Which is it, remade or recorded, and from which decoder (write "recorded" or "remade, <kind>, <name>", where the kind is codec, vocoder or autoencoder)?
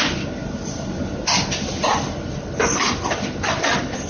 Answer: recorded